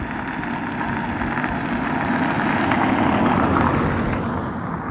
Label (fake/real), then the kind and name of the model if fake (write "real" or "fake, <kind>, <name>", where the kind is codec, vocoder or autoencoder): real